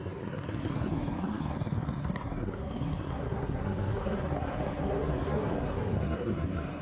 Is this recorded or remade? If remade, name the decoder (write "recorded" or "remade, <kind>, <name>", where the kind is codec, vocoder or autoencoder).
remade, codec, SNAC